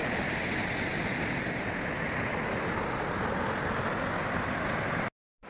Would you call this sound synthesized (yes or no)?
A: no